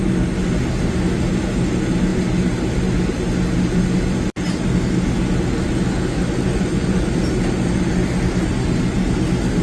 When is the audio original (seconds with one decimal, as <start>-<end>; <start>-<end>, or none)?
0.0-6.5; 7.1-9.6